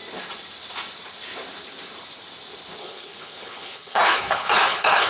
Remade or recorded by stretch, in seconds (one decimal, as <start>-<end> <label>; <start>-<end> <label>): 0.0-2.8 recorded; 2.8-5.1 remade